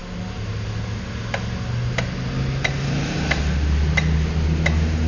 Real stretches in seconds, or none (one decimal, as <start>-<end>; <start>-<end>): 0.0-5.1